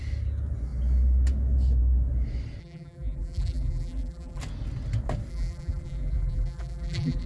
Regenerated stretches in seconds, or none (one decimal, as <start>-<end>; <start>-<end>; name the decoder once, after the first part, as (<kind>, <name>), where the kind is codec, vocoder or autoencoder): 2.6-4.4 (vocoder, BigVGAN v2); 5.3-7.3